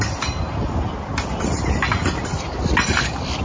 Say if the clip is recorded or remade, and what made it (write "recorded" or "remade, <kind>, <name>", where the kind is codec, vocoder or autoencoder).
recorded